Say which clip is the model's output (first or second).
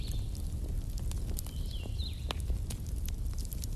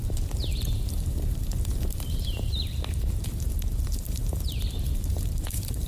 second